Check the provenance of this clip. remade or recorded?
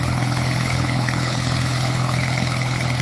remade